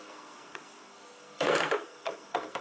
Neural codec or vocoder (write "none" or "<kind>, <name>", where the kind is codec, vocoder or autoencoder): codec, SNAC